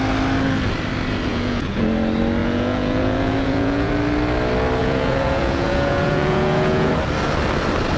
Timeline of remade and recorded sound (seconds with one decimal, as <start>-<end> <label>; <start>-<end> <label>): 0.0-1.3 recorded; 1.3-1.8 remade; 1.8-2.4 recorded; 2.4-3.9 remade; 3.9-4.8 recorded; 4.8-6.9 remade; 6.9-8.0 recorded

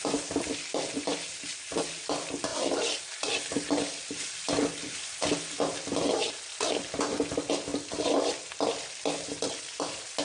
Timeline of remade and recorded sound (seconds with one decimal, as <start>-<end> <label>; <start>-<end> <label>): 0.0-10.2 recorded

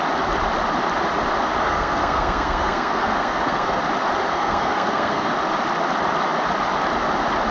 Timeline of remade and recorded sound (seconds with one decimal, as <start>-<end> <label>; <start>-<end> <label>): 0.0-1.6 recorded; 1.6-3.8 remade; 3.8-4.3 recorded; 4.3-5.3 remade; 5.3-7.5 recorded

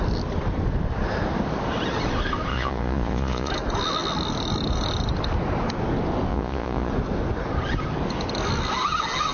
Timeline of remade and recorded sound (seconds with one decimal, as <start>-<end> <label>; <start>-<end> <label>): 0.0-2.5 recorded; 2.5-3.5 remade; 3.5-6.3 recorded; 6.3-6.9 remade; 6.9-9.3 recorded

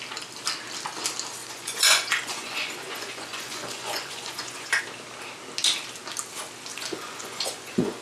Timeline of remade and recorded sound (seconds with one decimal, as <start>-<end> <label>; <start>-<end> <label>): 0.0-1.4 recorded; 1.4-4.8 remade; 4.8-6.7 recorded; 6.7-8.0 remade

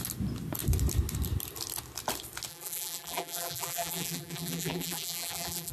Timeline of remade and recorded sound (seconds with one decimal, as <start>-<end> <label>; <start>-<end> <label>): 0.0-2.5 recorded; 2.5-5.7 remade